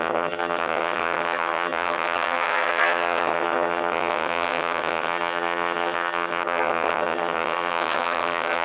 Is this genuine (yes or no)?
no